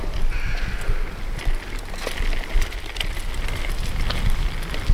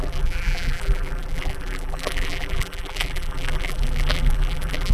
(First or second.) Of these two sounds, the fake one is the second